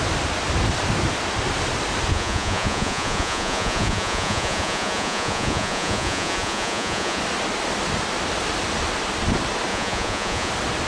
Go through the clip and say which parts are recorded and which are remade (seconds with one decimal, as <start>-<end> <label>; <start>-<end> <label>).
0.0-2.1 recorded; 2.1-7.2 remade; 7.2-9.7 recorded; 9.7-10.5 remade; 10.5-10.9 recorded